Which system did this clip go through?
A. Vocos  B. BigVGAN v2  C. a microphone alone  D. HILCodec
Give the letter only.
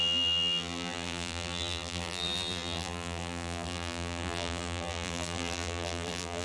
B